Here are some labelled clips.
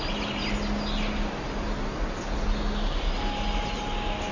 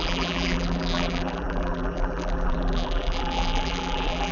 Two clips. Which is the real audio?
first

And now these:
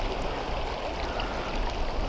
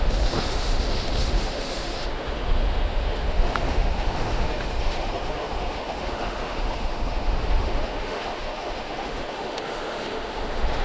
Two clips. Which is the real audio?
first